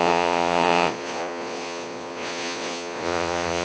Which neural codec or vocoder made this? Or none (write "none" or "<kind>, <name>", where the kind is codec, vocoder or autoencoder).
vocoder, Vocos